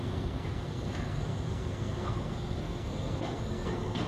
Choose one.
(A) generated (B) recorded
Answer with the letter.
A